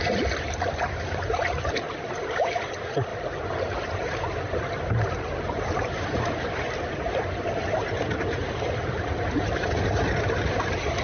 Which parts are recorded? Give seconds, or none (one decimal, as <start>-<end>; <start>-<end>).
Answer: 3.1-3.6